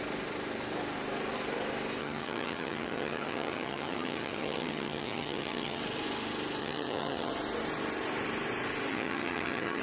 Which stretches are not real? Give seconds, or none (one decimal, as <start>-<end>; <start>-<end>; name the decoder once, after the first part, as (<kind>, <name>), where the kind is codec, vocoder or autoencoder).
2.0-5.8 (vocoder, HiFi-GAN); 6.6-7.3; 8.9-9.8